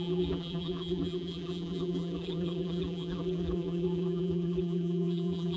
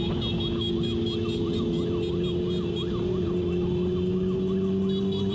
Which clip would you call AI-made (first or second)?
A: first